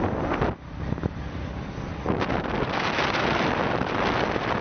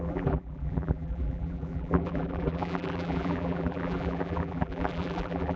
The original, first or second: first